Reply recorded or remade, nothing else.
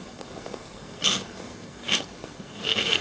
remade